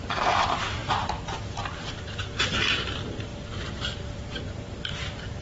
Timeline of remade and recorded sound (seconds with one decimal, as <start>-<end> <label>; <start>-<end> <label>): 0.0-2.2 remade; 2.2-2.9 recorded; 2.9-3.3 remade; 3.3-4.4 recorded; 4.4-5.4 remade